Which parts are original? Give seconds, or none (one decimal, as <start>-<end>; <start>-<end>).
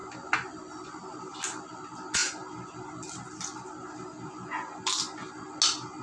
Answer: 0.0-6.0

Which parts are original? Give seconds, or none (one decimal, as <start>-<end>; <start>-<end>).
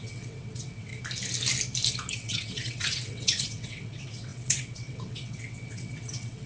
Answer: 0.9-2.1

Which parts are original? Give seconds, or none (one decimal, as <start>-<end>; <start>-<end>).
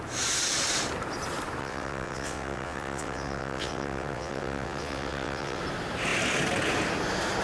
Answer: 0.0-1.6; 5.6-7.4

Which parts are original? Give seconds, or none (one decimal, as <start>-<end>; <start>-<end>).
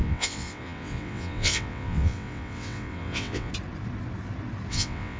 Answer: 3.5-4.7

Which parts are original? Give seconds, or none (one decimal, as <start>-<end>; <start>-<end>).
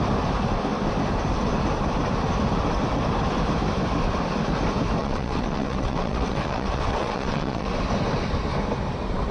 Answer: 0.0-5.0; 7.7-9.3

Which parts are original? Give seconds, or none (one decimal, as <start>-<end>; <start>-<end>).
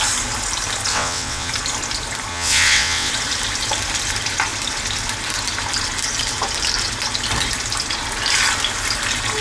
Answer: 0.0-0.9; 1.5-2.3; 3.1-9.4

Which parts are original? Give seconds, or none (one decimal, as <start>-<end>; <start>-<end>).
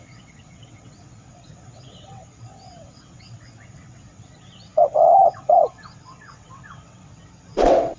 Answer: none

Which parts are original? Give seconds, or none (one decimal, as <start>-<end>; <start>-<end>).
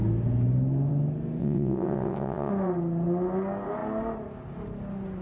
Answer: 0.0-1.4; 2.5-5.2